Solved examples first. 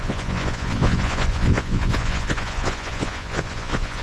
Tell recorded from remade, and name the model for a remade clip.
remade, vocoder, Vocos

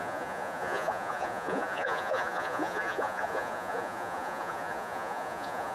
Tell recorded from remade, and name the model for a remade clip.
remade, vocoder, Vocos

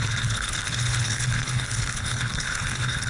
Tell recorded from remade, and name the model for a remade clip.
remade, codec, HILCodec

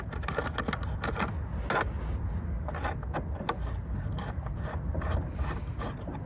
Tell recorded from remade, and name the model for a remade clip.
recorded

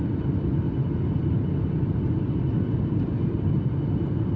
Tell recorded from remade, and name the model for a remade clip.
remade, vocoder, BigVGAN v2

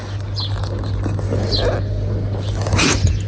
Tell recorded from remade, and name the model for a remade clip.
recorded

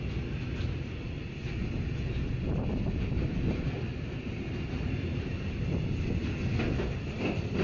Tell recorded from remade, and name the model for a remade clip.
recorded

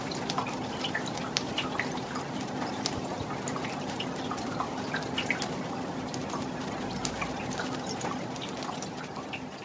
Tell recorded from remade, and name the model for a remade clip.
recorded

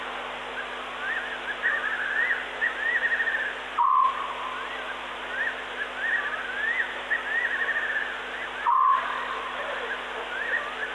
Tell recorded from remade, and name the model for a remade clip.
recorded